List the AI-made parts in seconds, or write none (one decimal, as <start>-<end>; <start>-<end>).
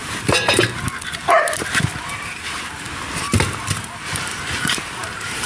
2.1-3.0; 4.3-5.5